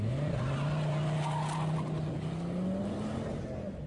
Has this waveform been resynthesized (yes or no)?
no